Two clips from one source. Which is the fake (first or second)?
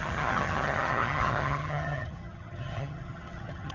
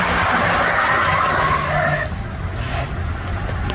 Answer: first